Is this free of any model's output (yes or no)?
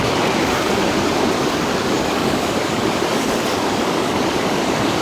no